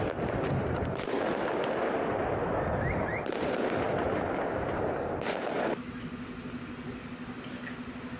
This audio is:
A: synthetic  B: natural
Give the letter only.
B